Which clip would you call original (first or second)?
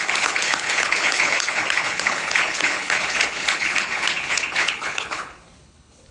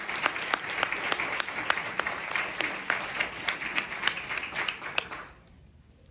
second